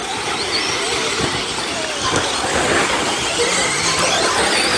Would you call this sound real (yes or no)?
yes